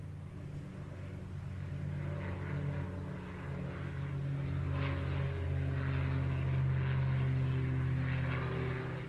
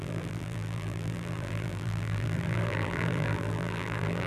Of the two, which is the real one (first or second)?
first